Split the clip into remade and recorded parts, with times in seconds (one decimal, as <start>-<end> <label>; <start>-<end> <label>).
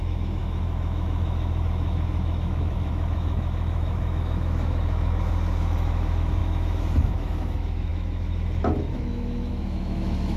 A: 0.0-10.4 remade